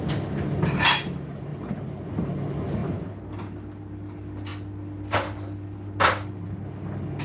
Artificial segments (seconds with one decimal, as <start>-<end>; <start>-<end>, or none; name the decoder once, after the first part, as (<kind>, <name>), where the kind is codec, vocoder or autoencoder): none